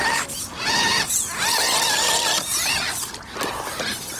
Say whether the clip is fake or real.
real